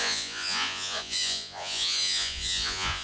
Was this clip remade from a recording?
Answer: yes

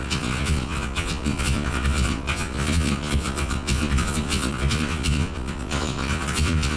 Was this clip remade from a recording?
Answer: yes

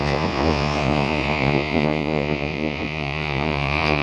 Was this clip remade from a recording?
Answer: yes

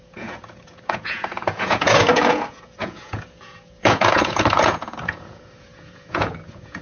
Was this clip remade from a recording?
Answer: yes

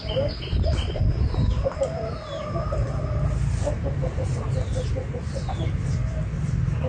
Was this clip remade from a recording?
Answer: no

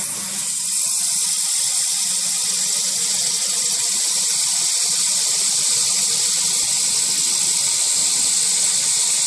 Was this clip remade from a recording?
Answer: no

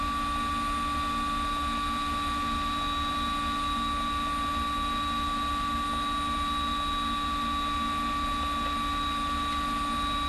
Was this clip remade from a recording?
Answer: no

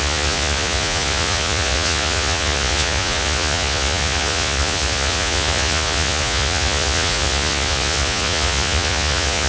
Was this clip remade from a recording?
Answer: yes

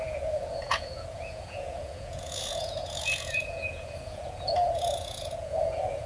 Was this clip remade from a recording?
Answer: yes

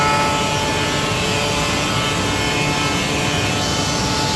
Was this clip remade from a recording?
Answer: no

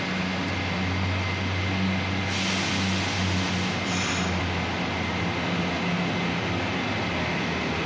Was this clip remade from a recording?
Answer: no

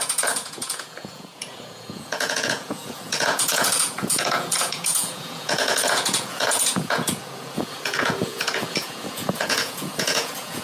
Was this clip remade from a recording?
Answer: yes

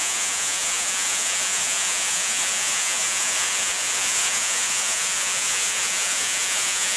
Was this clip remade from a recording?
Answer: yes